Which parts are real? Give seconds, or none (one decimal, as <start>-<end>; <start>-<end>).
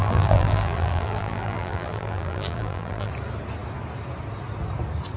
3.1-5.2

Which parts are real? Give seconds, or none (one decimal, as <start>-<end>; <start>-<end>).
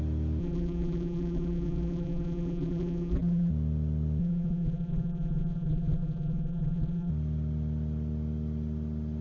0.0-0.4; 3.5-4.2; 7.1-9.2